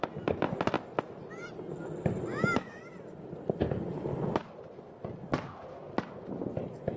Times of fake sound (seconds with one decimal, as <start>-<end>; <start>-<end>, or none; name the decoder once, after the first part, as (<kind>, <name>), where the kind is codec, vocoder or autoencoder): 2.3-2.8 (autoencoder, DAC-VAE)